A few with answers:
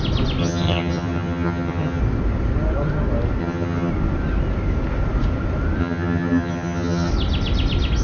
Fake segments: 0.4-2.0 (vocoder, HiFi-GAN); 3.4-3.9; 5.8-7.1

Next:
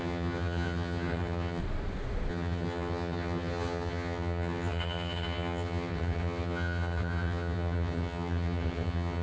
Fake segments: 0.0-1.6 (vocoder, HiFi-GAN); 2.3-9.2

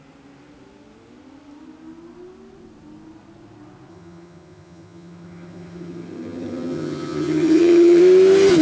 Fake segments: 3.9-8.0 (vocoder, HiFi-GAN)

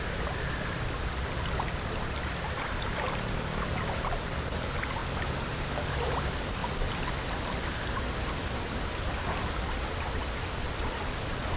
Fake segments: none

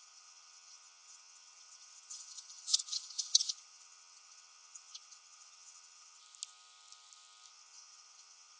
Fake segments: 0.0-6.2 (vocoder, HiFi-GAN); 7.5-8.6